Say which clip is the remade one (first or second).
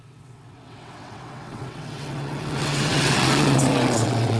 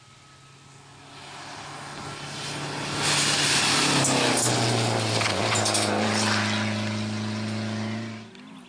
first